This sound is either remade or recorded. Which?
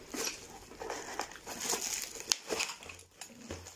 recorded